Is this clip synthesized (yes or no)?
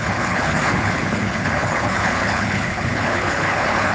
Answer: yes